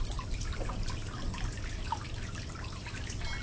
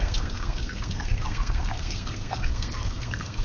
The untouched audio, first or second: first